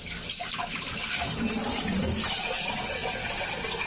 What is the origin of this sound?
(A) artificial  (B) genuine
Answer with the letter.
B